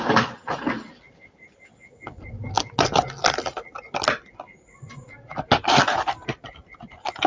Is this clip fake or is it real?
real